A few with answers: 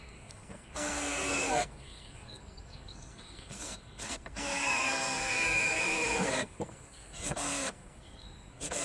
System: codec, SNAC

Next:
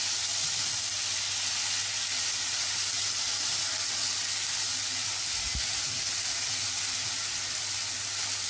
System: none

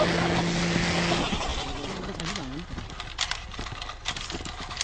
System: none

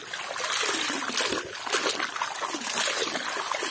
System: none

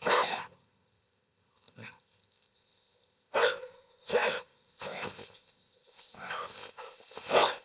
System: codec, ZipCodec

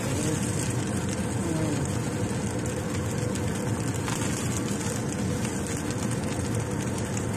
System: none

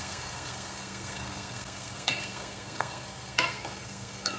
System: codec, SNAC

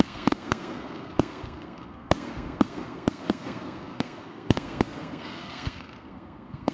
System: codec, SNAC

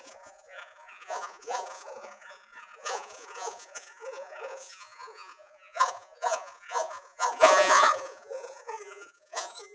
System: vocoder, Vocos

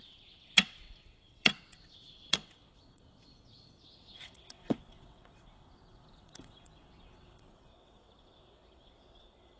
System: vocoder, WaveNeXt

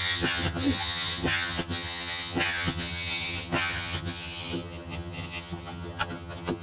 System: vocoder, HiFi-GAN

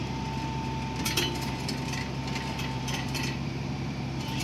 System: vocoder, BigVGAN v2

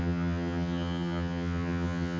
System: vocoder, HiFi-GAN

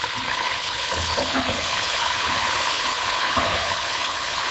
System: codec, HILCodec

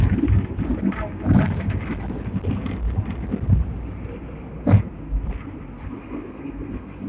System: none